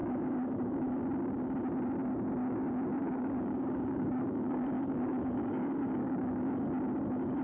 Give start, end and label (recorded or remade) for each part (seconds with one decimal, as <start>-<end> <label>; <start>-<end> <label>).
0.0-1.0 remade; 1.0-3.0 recorded; 3.0-6.5 remade; 6.5-7.4 recorded